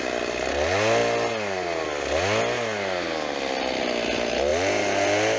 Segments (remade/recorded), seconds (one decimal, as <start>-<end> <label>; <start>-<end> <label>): 0.0-5.4 recorded